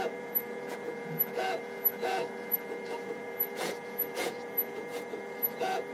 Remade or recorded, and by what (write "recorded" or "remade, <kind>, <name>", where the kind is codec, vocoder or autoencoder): remade, vocoder, Vocos